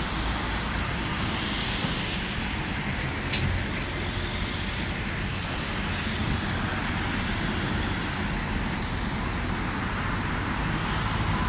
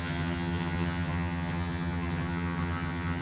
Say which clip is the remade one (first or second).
second